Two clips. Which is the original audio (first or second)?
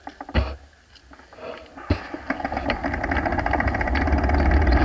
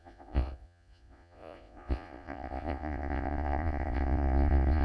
first